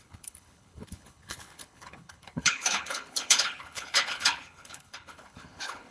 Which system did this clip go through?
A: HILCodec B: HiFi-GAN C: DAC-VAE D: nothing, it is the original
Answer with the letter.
A